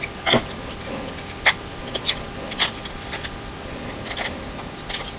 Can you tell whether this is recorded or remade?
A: recorded